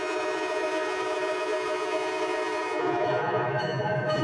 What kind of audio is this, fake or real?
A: fake